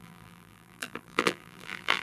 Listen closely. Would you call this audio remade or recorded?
remade